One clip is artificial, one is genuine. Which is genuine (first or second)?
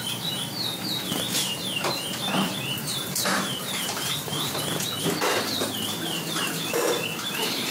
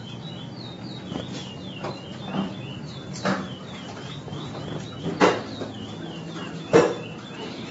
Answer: second